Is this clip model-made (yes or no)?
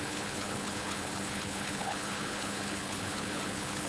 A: yes